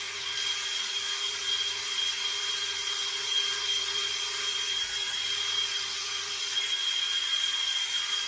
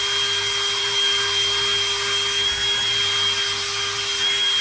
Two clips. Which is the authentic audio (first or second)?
second